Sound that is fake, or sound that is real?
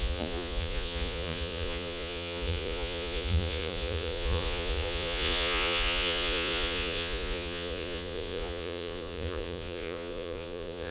fake